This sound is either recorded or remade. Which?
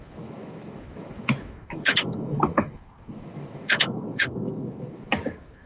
remade